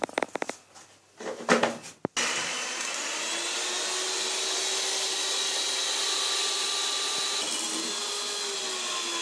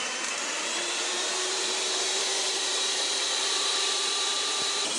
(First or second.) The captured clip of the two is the first